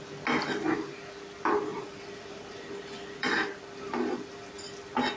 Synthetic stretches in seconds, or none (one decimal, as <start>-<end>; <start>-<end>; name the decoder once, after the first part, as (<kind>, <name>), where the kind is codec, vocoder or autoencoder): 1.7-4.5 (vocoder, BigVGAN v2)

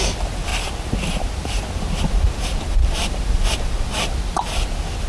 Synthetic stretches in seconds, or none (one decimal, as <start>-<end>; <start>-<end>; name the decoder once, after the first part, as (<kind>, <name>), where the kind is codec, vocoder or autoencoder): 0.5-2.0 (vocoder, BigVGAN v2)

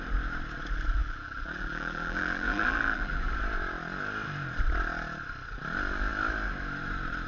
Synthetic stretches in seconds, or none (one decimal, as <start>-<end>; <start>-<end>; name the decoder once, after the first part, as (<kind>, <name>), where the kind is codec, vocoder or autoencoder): 1.0-3.3 (vocoder, BigVGAN v2)

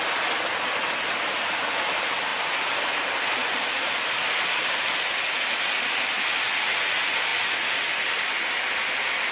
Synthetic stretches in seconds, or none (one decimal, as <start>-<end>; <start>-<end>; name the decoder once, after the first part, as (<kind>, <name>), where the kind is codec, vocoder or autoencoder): none

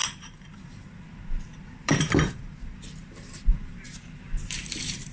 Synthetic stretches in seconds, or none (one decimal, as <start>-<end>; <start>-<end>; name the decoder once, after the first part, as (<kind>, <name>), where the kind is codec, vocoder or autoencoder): 0.0-5.1 (vocoder, BigVGAN v2)

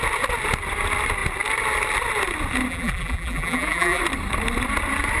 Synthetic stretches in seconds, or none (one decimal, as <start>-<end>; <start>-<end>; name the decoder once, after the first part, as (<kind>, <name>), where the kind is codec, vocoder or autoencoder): 2.7-4.0 (vocoder, BigVGAN v2)

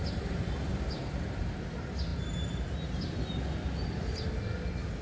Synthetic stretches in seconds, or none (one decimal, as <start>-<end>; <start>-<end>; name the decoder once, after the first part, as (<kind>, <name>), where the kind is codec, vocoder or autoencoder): 0.7-1.4 (vocoder, BigVGAN v2)

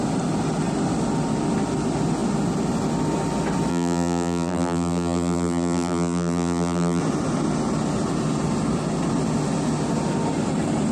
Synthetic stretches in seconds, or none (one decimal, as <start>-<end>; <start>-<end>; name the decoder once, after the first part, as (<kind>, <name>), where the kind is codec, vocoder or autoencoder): 3.7-7.0 (vocoder, BigVGAN v2)